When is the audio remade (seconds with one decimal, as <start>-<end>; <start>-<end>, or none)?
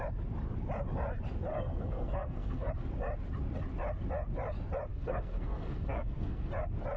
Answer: 1.5-2.7; 4.9-6.5